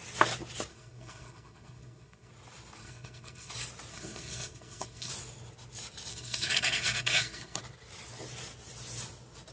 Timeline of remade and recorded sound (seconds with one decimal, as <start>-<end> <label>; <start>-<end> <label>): 0.0-0.7 recorded; 0.7-2.3 remade; 2.3-2.8 recorded; 2.8-3.5 remade; 3.5-3.9 recorded; 3.9-5.1 remade; 5.1-6.1 recorded; 6.1-7.6 remade; 7.6-9.5 recorded